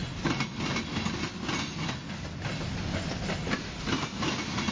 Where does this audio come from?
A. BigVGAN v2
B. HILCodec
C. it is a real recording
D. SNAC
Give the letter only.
C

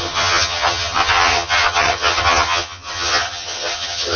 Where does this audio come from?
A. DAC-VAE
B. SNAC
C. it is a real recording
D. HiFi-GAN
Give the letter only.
D